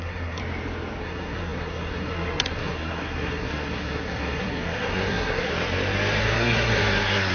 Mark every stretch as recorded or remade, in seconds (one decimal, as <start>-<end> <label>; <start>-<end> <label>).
0.0-0.4 remade; 0.4-1.0 recorded; 1.0-5.5 remade; 5.5-6.2 recorded; 6.2-7.3 remade